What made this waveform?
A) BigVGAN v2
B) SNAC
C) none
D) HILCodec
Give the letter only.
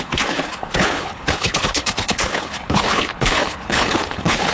D